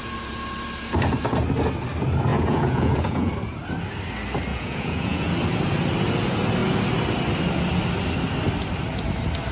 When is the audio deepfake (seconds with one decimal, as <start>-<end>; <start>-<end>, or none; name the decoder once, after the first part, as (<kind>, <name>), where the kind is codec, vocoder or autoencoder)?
2.3-3.3 (vocoder, Vocos); 4.5-5.3